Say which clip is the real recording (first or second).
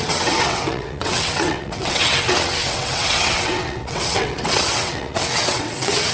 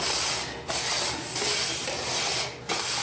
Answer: second